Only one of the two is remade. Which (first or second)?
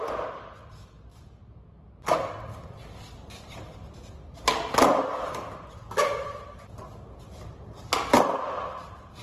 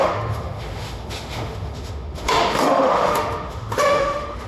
second